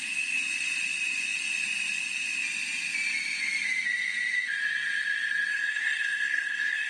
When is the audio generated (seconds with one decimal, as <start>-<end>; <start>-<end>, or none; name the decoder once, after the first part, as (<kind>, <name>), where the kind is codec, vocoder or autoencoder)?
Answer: 5.5-6.9 (codec, SNAC)

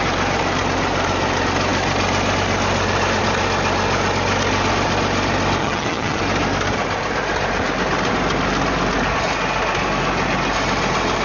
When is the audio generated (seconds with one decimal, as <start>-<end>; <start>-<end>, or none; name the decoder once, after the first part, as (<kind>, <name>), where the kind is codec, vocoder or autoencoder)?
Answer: 5.6-6.2 (vocoder, HiFi-GAN)

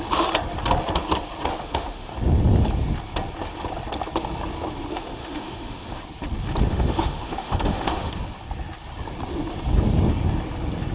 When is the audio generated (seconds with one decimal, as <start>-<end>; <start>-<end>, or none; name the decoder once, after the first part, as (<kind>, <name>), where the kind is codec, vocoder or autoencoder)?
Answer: 1.5-2.1 (autoencoder, DAC-VAE); 4.9-6.0; 6.7-8.1

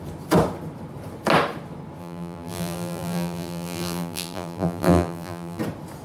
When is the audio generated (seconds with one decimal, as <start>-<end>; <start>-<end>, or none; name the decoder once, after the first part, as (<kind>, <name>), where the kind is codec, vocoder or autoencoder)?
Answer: 2.0-5.6 (vocoder, BigVGAN v2)

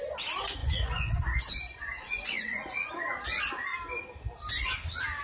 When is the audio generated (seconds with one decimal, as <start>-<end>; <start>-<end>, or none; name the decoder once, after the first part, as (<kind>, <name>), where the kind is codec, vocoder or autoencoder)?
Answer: 0.6-2.9 (vocoder, Vocos)